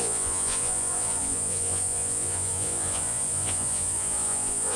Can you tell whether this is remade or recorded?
remade